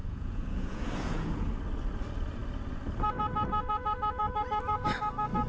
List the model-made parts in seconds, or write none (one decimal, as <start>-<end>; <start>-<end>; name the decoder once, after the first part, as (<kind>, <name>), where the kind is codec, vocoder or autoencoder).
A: 0.0-1.5 (vocoder, Vocos)